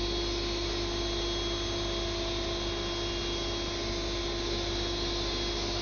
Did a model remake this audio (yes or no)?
no